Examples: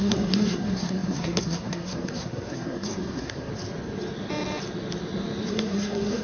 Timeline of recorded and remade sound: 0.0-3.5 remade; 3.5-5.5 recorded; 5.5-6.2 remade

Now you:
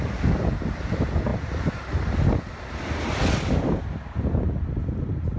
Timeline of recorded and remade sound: 0.0-5.4 recorded

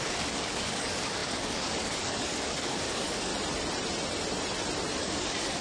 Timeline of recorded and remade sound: 0.0-3.3 remade; 3.3-5.0 recorded; 5.0-5.6 remade